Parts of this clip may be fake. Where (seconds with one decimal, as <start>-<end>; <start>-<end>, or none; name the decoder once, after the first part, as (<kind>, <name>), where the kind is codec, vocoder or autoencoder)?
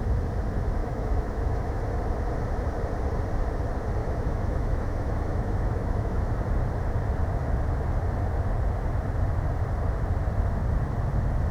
0.8-1.8 (autoencoder, DAC-VAE); 4.0-6.3